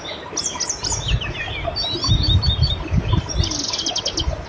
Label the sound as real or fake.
real